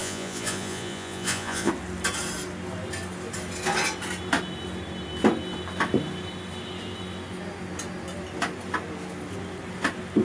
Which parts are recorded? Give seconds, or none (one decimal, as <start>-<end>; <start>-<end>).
1.7-10.2